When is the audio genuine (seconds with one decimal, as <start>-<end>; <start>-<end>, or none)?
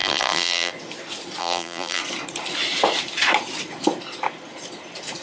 0.7-1.4; 2.0-5.2